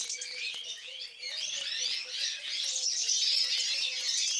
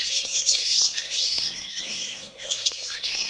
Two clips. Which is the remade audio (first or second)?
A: second